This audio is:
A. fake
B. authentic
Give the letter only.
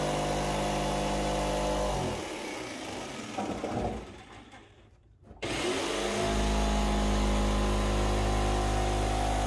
B